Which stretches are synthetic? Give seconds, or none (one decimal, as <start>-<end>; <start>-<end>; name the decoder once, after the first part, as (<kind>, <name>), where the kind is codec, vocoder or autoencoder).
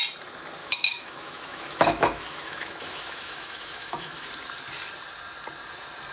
0.6-4.3 (autoencoder, DAC-VAE)